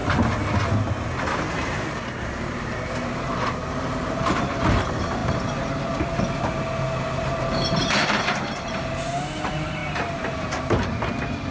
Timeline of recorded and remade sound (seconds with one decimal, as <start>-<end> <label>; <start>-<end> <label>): 0.0-1.5 recorded; 1.5-11.5 remade